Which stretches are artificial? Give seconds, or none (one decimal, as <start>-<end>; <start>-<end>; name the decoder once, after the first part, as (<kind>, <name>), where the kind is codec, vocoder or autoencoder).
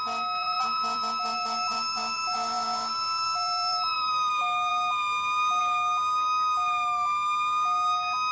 0.4-4.3 (vocoder, BigVGAN v2)